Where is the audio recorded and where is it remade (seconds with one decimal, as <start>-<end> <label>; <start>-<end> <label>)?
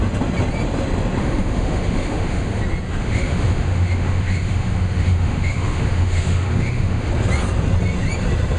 0.0-1.2 recorded; 1.2-2.6 remade; 2.6-3.0 recorded; 3.0-7.1 remade; 7.1-8.6 recorded